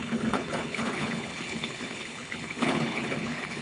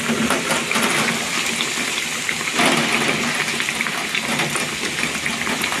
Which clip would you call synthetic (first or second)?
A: first